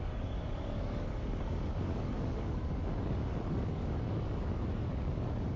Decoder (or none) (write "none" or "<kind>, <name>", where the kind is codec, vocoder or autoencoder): codec, DAC